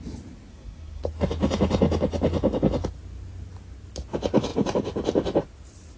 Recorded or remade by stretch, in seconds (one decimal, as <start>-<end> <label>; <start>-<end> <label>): 0.0-0.5 recorded; 0.5-1.0 remade; 1.0-6.0 recorded